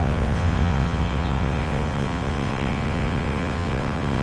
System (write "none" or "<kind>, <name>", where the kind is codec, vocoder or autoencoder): vocoder, WaveNeXt